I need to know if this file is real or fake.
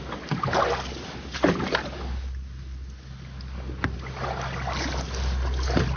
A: real